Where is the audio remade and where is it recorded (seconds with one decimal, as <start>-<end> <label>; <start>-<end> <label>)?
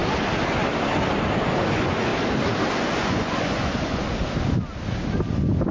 0.0-1.7 recorded; 1.7-2.1 remade; 2.1-2.7 recorded; 2.7-4.0 remade; 4.0-5.7 recorded